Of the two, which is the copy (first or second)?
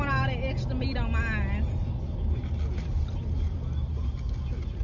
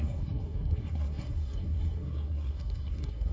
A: second